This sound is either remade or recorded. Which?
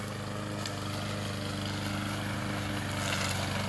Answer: recorded